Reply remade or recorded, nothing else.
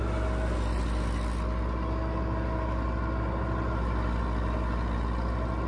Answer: recorded